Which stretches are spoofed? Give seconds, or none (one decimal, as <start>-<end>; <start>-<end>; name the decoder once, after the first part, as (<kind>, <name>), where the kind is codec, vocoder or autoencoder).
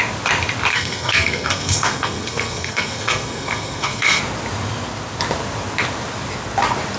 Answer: 0.7-4.2 (codec, SNAC)